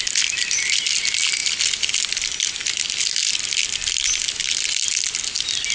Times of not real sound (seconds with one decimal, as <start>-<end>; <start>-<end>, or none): none